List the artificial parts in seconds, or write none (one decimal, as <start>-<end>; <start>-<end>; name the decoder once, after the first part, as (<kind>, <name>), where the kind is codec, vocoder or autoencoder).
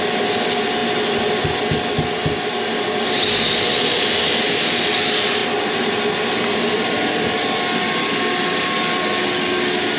none